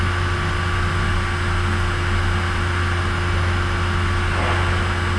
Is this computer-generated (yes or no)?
no